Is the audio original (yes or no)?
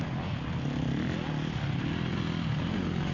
yes